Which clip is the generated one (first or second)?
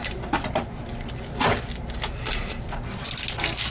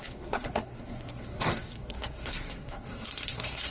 second